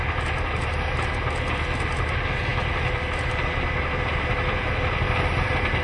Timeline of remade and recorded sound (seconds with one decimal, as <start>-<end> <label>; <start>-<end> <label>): 0.0-5.8 recorded